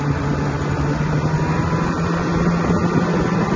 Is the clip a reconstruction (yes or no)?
no